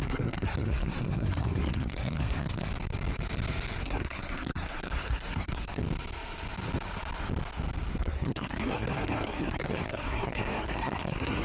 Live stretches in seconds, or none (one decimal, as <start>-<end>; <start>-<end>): 2.7-3.8; 5.8-8.0